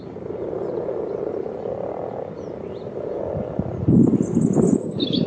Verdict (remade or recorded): recorded